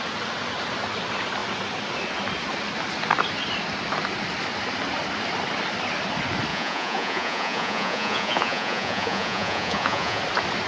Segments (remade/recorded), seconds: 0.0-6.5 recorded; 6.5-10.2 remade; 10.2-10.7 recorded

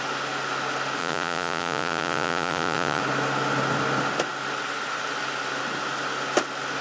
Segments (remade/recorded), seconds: 0.0-1.0 recorded; 1.0-3.0 remade; 3.0-6.8 recorded

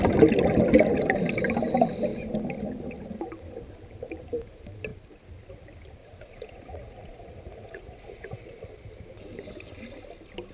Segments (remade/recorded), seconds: 0.0-6.0 recorded; 6.0-8.6 remade; 8.6-10.5 recorded